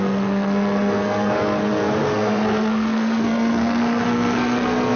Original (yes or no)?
no